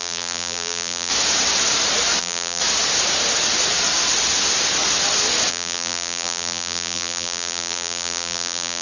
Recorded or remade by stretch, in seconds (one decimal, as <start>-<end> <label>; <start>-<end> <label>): 0.0-1.1 remade; 1.1-2.2 recorded; 2.2-2.6 remade; 2.6-5.5 recorded; 5.5-8.8 remade